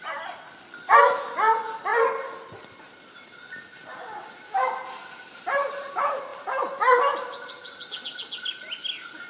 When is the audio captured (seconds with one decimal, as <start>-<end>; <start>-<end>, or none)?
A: 0.0-9.3